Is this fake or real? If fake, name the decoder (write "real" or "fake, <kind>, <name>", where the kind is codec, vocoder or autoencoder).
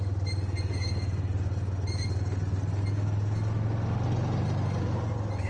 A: real